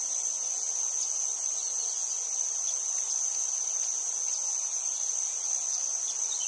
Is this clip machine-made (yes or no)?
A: no